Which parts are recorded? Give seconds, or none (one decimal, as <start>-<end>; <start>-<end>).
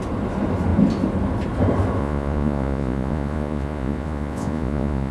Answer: 0.0-2.0